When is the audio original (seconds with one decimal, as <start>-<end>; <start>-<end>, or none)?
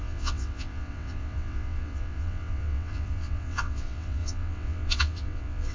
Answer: none